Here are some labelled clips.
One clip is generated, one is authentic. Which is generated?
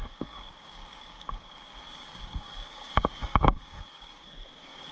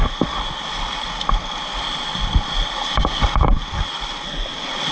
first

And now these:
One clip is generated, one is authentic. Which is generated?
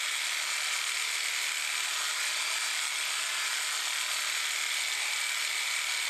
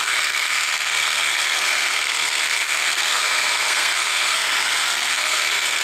second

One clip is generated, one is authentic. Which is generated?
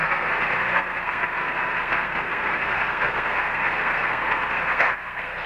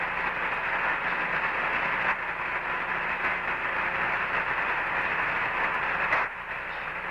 first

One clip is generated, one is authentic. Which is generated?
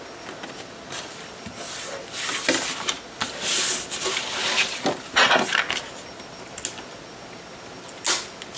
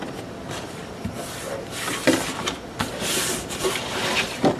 second